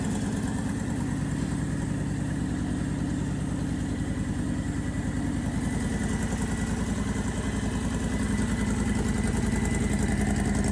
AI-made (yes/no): no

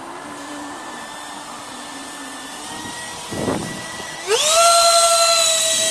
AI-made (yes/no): no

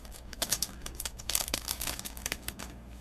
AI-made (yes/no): yes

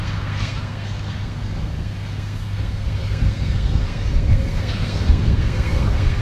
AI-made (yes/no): yes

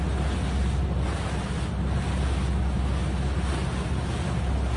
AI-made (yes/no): no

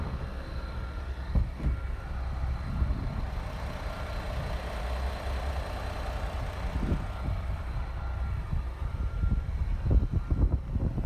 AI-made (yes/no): no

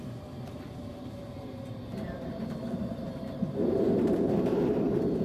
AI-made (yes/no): yes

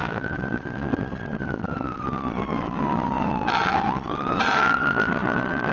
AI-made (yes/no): yes